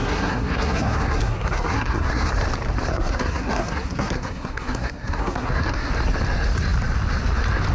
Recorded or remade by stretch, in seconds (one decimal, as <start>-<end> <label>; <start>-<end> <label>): 0.0-2.3 remade; 2.3-2.9 recorded; 2.9-5.9 remade; 5.9-7.7 recorded